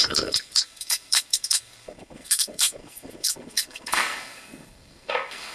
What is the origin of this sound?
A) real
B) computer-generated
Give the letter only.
B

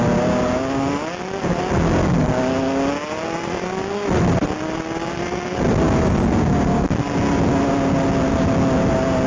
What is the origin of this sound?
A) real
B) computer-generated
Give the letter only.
A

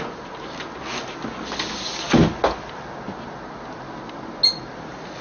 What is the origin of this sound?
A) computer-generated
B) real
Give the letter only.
B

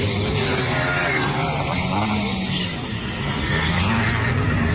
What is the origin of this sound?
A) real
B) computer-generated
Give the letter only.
A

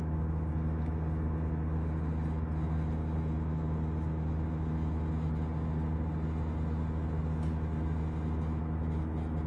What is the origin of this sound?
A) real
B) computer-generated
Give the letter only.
A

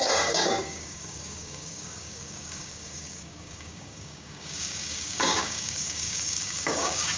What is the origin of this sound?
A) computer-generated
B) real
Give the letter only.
A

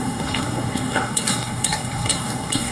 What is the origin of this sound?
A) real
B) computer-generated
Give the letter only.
B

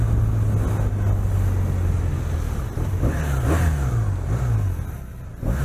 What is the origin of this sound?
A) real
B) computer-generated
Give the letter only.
A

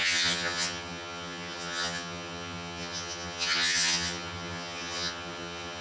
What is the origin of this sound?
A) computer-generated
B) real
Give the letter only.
A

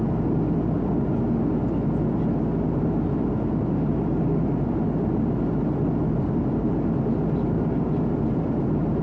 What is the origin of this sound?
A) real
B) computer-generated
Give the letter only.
A